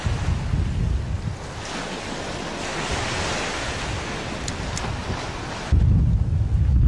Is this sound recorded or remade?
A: recorded